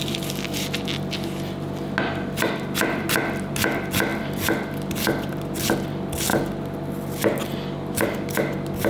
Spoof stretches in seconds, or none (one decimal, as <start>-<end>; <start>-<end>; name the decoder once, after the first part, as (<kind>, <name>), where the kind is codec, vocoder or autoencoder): none